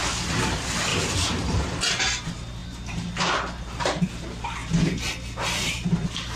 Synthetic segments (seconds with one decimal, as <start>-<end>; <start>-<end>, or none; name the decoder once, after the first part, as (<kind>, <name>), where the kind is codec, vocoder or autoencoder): 0.9-1.8 (vocoder, BigVGAN v2); 2.6-4.0